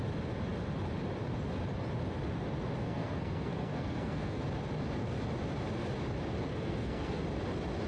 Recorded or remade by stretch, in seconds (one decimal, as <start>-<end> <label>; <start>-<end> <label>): 0.0-2.8 recorded; 2.8-4.4 remade; 4.4-6.5 recorded; 6.5-7.2 remade; 7.2-7.9 recorded